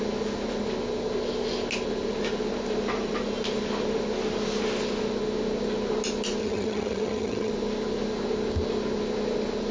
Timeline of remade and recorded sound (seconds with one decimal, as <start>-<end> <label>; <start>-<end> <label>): 0.0-6.4 recorded; 6.4-7.5 remade; 7.5-9.7 recorded